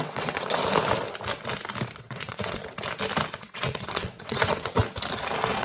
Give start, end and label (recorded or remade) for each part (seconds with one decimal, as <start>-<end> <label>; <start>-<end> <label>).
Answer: 0.0-0.6 remade; 0.6-2.0 recorded; 2.0-2.6 remade; 2.6-3.3 recorded; 3.3-4.8 remade; 4.8-5.6 recorded